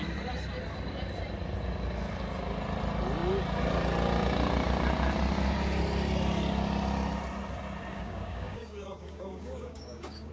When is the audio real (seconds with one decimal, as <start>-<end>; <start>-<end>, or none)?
0.0-7.9